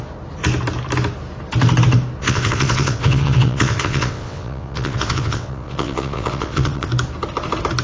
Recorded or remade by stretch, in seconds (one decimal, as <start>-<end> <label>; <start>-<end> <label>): 0.0-2.2 recorded; 2.2-6.9 remade; 6.9-7.8 recorded